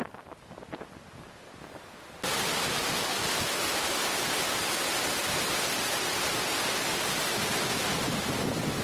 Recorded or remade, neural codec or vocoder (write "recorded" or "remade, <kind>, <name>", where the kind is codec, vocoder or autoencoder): recorded